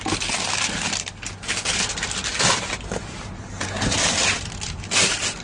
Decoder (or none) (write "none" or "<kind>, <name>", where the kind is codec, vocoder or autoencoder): none